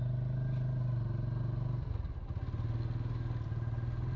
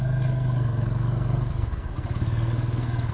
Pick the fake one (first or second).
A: second